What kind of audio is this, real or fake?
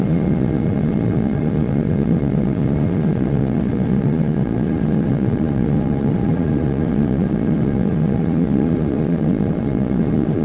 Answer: fake